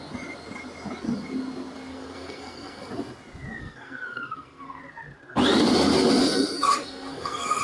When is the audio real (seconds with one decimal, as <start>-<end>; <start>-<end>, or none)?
0.0-1.9; 2.9-3.6; 4.8-6.2